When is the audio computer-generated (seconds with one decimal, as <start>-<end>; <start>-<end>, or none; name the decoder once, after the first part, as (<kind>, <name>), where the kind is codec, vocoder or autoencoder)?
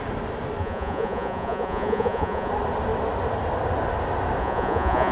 0.6-2.5 (vocoder, Vocos); 4.4-5.1